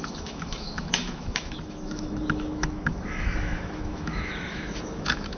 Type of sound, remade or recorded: remade